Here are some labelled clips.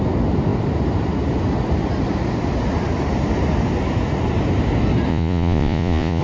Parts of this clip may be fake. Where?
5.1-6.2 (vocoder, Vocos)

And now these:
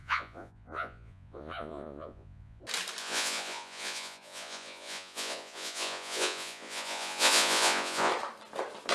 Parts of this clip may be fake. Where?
0.0-2.6 (vocoder, Vocos); 3.0-8.1

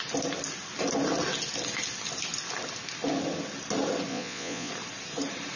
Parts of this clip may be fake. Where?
4.1-4.7 (vocoder, Vocos)

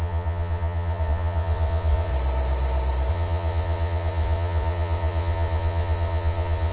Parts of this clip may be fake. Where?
0.0-2.1 (vocoder, Vocos); 3.1-6.7

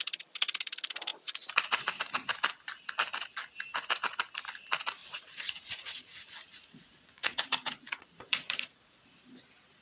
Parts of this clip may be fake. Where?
1.1-2.0 (vocoder, Vocos); 5.0-9.2

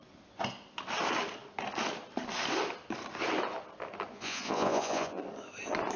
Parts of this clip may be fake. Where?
4.1-5.2 (vocoder, Vocos)

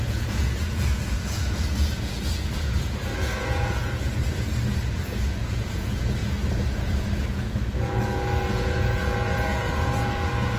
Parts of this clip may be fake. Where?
0.0-4.2 (vocoder, Vocos); 4.9-10.6